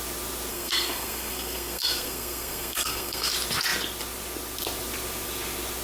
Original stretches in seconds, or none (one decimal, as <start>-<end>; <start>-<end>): 0.0-0.5; 3.3-5.8